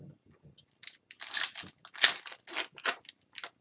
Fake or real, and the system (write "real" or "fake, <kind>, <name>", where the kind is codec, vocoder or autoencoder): real